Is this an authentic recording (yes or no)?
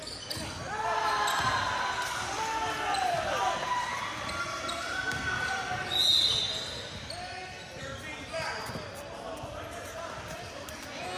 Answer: yes